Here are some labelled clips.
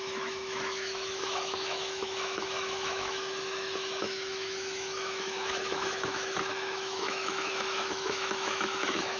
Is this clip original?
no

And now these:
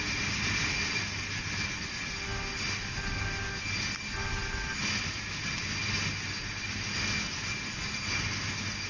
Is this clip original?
yes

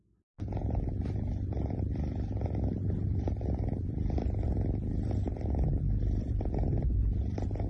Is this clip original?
no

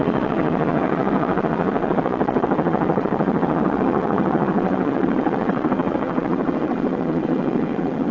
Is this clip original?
no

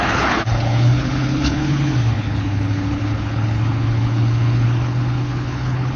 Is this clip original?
no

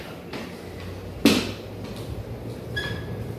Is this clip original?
yes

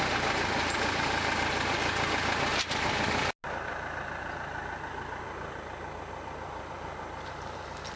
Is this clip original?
yes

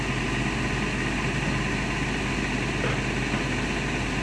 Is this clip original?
yes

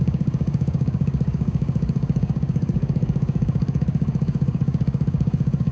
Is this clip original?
no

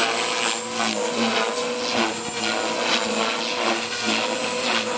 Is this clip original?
yes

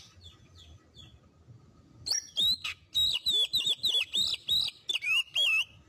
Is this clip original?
yes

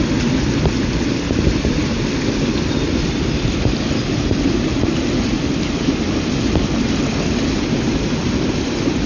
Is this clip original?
yes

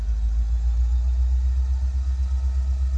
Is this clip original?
yes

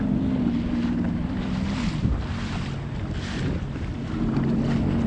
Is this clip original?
yes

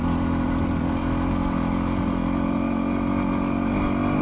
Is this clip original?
yes